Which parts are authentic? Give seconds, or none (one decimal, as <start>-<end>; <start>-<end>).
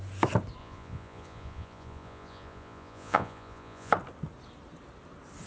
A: 0.0-0.6; 3.9-5.5